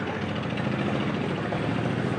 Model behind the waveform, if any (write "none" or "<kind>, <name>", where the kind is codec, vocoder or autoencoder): none